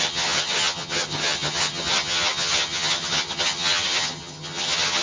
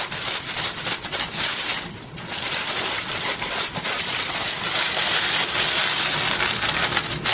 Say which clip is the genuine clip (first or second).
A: second